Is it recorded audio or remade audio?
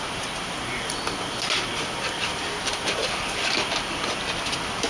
recorded